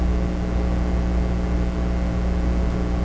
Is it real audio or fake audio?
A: real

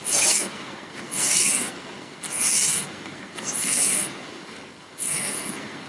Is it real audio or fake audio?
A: fake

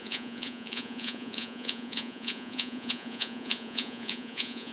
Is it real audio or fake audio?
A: fake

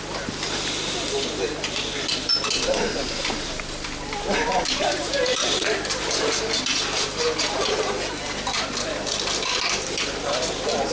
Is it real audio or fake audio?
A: fake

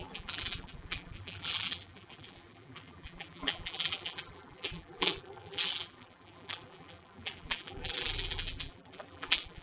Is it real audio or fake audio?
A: fake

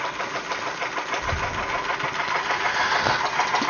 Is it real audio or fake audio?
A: real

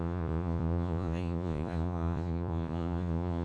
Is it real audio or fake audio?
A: fake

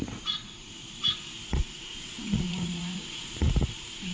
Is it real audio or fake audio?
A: fake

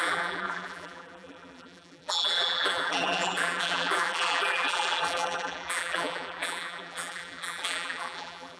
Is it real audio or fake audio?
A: fake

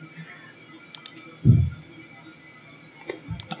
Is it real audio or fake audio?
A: real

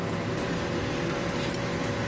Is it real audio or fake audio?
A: real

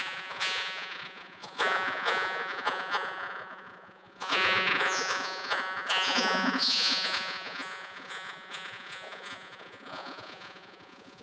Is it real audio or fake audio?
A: fake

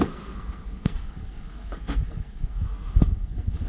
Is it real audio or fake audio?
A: fake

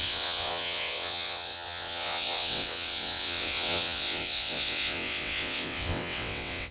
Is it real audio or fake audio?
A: fake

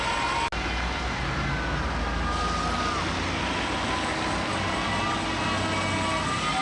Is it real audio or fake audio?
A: real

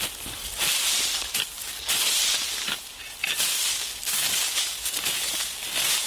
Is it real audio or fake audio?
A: real